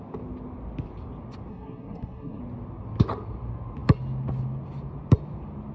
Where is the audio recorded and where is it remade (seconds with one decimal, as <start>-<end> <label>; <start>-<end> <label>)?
0.0-1.5 recorded; 1.5-2.4 remade; 2.4-5.7 recorded